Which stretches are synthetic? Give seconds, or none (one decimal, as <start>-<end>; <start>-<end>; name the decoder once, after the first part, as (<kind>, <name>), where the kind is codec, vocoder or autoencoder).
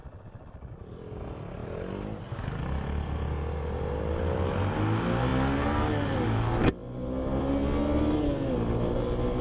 0.0-0.7 (vocoder, Vocos)